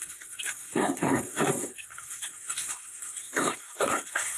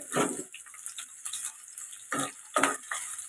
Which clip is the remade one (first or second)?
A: first